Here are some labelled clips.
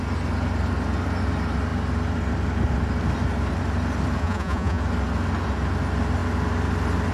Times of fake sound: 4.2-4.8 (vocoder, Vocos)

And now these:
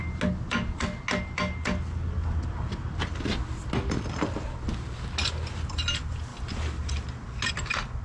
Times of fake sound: none